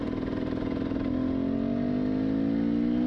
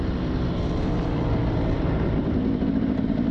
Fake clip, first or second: second